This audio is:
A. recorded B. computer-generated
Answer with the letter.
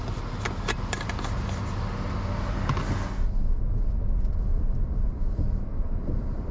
A